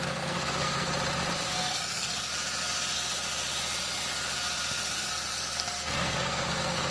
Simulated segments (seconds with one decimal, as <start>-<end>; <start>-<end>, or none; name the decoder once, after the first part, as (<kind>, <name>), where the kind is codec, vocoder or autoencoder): 0.0-0.9 (codec, SNAC); 1.6-2.3; 4.9-6.9